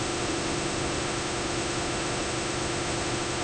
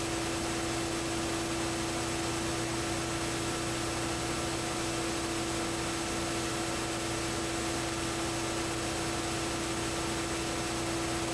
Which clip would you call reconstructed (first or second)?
first